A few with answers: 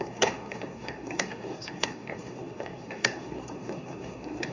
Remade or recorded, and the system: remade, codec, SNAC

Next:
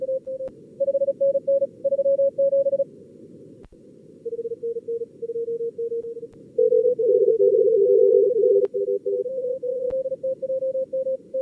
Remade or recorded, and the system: recorded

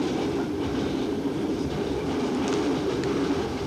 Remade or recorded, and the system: remade, vocoder, BigVGAN v2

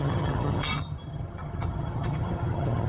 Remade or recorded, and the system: remade, vocoder, HiFi-GAN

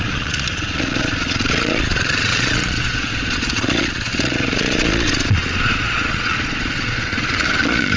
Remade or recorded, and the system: remade, vocoder, Vocos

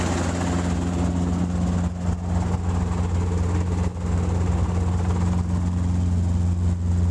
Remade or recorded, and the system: recorded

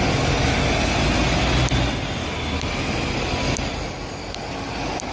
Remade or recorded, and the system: recorded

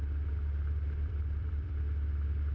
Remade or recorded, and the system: remade, vocoder, BigVGAN v2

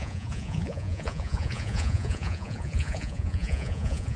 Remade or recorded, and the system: remade, vocoder, Vocos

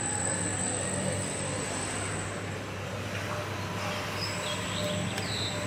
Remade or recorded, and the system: recorded